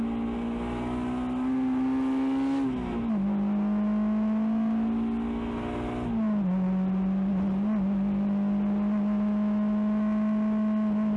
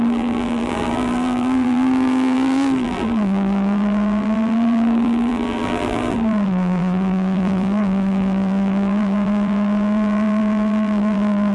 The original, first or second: first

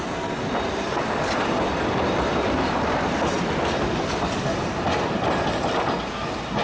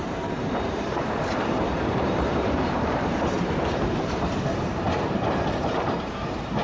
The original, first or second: first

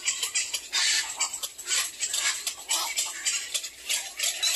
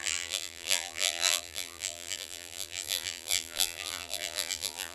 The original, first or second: first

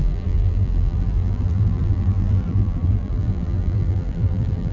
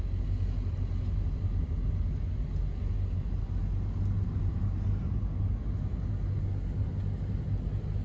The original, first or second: second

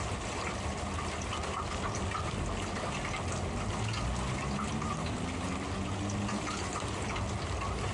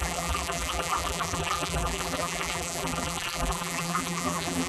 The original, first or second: first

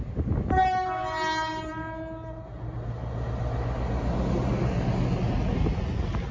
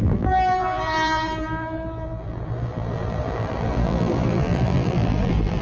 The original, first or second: first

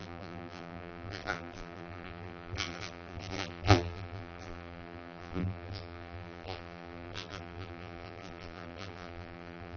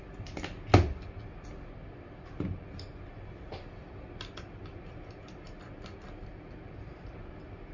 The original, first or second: second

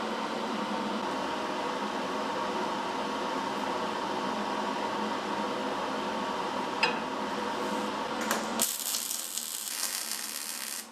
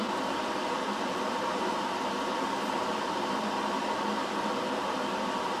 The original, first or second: first